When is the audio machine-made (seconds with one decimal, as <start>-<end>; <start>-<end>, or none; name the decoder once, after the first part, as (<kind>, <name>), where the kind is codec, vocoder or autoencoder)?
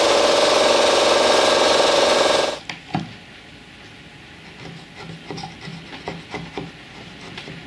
none